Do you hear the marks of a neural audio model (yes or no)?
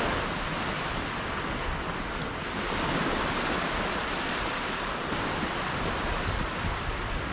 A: no